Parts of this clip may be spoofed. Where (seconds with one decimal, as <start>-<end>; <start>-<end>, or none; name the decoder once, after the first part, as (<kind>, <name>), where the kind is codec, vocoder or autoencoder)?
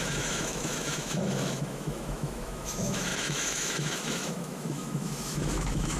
0.0-6.0 (autoencoder, DAC-VAE)